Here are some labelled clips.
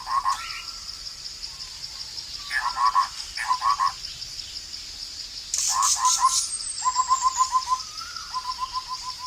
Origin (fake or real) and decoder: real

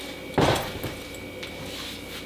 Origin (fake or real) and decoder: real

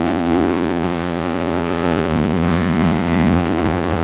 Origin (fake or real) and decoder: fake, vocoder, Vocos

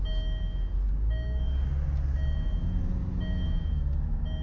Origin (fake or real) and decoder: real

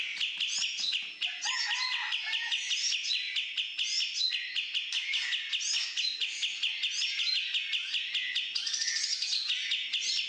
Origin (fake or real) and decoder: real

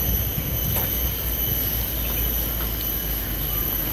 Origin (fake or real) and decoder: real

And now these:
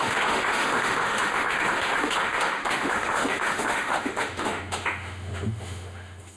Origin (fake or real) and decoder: fake, autoencoder, DAC-VAE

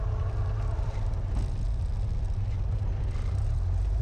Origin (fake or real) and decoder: real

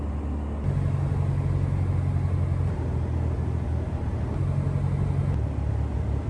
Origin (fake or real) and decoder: real